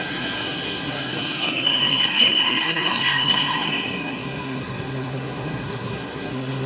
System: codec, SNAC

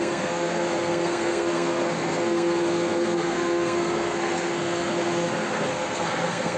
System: codec, SNAC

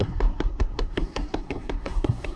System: codec, SNAC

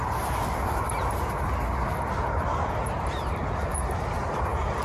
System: none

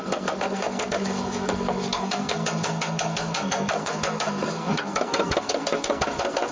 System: codec, SNAC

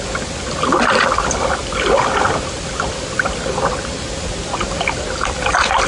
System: none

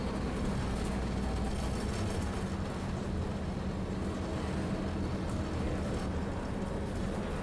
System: none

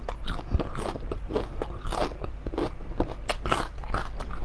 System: none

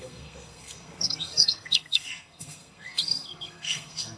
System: codec, SNAC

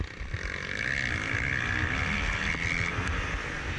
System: none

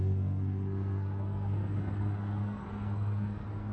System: codec, SNAC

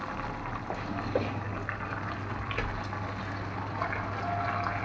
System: none